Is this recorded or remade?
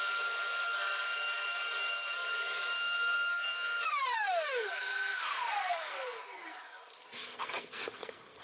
remade